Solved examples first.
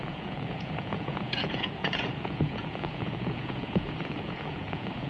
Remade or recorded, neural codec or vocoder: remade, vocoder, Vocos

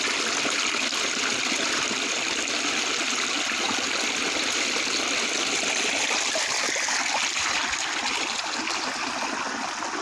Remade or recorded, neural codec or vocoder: recorded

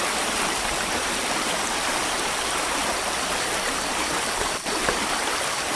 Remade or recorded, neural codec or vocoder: recorded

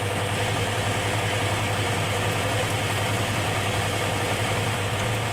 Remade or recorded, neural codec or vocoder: recorded